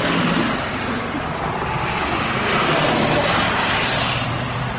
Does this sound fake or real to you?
real